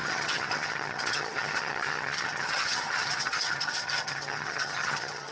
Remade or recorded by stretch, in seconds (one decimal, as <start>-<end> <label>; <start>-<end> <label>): 0.0-5.3 remade